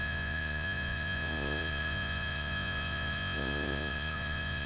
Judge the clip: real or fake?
fake